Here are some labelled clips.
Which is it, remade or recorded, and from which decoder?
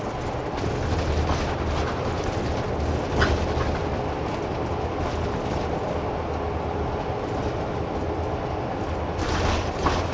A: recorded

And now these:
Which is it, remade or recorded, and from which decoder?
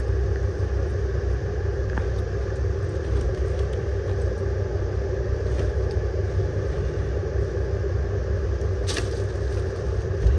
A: recorded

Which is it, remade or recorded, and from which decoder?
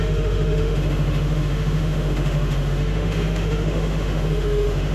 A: remade, autoencoder, DAC-VAE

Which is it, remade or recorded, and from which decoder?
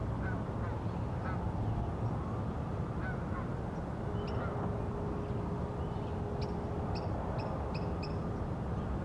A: recorded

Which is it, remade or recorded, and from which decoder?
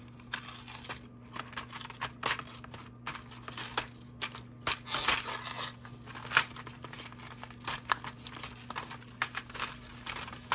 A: recorded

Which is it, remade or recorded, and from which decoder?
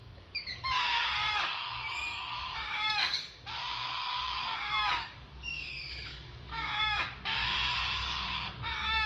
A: remade, codec, DAC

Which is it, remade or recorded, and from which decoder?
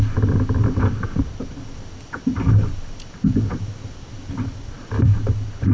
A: recorded